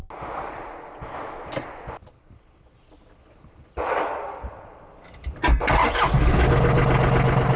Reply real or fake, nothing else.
real